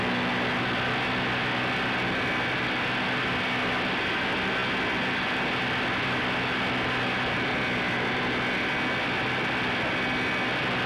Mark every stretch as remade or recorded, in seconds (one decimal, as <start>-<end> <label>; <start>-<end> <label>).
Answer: 0.0-10.9 recorded

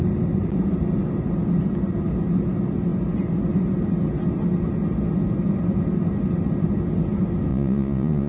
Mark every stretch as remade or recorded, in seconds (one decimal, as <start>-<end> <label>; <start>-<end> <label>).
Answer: 0.0-7.5 recorded; 7.5-8.3 remade

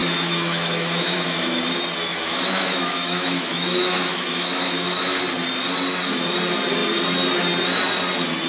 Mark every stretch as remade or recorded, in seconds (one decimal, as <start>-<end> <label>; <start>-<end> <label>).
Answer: 0.0-1.6 remade; 1.6-2.1 recorded; 2.1-5.2 remade; 5.2-8.5 recorded

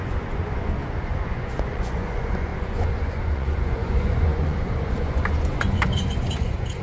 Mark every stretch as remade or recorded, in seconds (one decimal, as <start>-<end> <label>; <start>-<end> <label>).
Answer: 0.0-6.8 remade